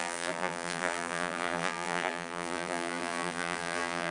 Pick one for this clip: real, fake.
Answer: fake